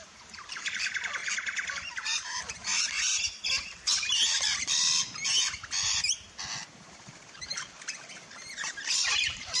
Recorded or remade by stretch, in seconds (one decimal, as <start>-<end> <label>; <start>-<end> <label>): 0.0-1.2 remade; 1.2-1.7 recorded; 1.7-2.7 remade; 2.7-6.9 recorded; 6.9-9.6 remade